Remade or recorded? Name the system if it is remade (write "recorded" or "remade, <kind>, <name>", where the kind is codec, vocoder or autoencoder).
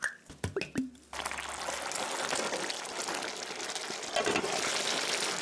recorded